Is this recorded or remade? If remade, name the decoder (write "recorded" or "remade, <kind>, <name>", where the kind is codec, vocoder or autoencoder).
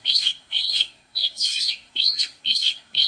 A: remade, codec, SNAC